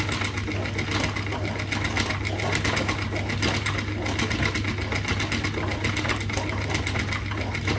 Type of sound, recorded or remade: recorded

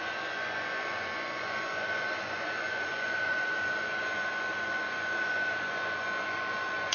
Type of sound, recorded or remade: remade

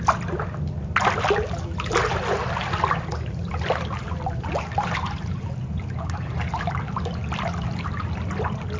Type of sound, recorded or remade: recorded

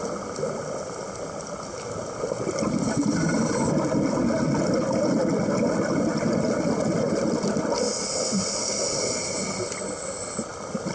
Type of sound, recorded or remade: recorded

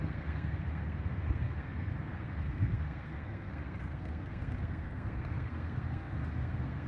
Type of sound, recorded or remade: remade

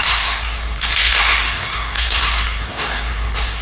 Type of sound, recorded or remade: remade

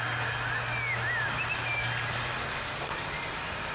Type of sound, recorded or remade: recorded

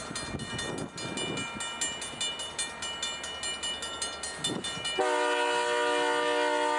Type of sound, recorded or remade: recorded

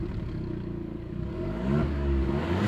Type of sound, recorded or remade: remade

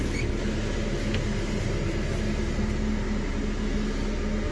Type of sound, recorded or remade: recorded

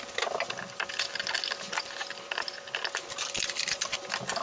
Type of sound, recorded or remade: recorded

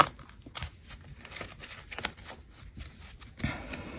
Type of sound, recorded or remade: recorded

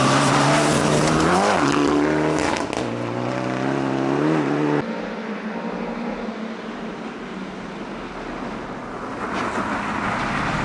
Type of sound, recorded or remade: recorded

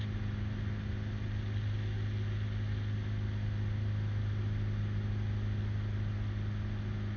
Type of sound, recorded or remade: recorded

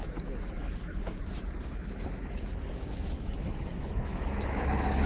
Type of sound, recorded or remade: remade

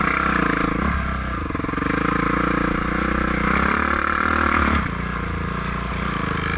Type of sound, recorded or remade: recorded